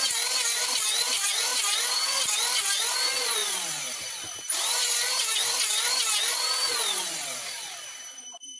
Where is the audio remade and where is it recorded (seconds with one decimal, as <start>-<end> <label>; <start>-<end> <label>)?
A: 0.0-8.6 recorded